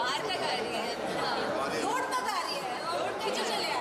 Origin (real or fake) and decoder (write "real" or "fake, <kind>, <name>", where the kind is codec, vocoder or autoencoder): real